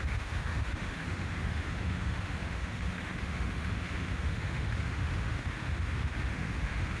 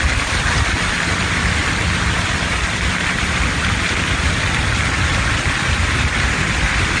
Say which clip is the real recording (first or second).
second